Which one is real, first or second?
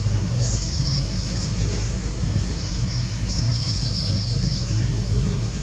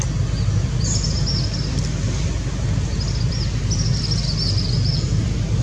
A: second